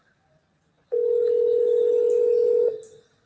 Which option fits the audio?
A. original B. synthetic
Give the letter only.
A